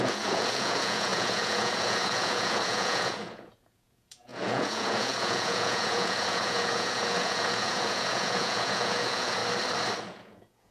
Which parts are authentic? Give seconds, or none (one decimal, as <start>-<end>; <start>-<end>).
9.4-10.0